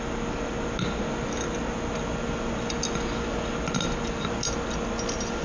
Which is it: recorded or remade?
recorded